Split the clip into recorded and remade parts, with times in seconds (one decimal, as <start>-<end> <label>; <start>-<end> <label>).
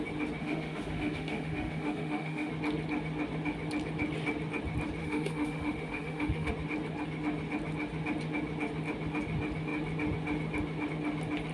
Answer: 0.0-0.4 recorded; 0.4-2.5 remade; 2.5-5.0 recorded; 5.0-6.5 remade; 6.5-11.5 recorded